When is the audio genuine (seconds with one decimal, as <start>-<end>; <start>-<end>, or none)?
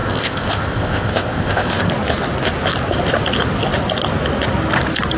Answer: 1.9-5.2